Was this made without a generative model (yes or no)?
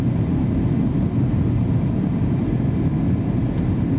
yes